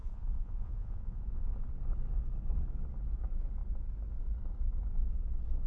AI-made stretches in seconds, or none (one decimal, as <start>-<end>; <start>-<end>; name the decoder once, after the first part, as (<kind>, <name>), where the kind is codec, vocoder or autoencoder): 0.0-1.5 (vocoder, Vocos)